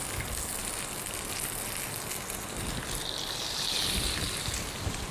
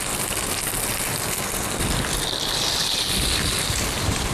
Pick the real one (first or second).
first